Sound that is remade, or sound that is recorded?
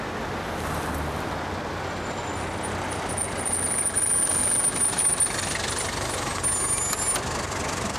recorded